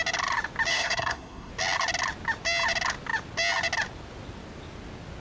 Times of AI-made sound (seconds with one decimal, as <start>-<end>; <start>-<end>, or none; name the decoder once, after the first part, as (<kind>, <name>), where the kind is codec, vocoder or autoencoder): 0.7-1.5 (codec, SNAC)